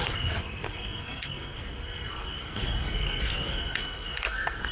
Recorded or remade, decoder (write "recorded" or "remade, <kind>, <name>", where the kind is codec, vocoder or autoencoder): remade, codec, SNAC